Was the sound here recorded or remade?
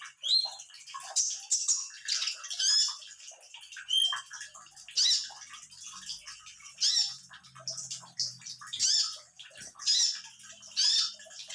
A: recorded